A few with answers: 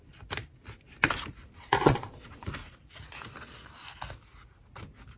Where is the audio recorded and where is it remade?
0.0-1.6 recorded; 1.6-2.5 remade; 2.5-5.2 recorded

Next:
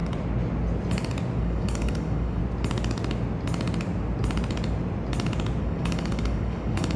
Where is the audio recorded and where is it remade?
0.0-1.4 recorded; 1.4-2.4 remade; 2.4-5.6 recorded; 5.6-7.0 remade

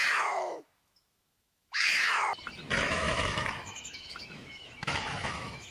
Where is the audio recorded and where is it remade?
0.0-2.2 remade; 2.2-2.8 recorded; 2.8-5.7 remade